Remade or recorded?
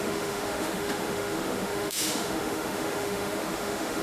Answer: remade